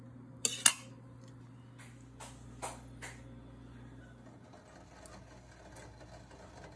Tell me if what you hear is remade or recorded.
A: recorded